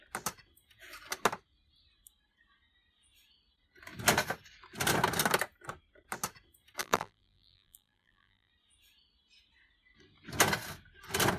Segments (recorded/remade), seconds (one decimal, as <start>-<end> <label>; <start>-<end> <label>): 0.0-6.8 recorded; 6.8-8.5 remade; 8.5-11.4 recorded